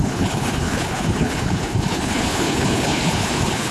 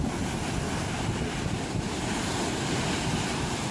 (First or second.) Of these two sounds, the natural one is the second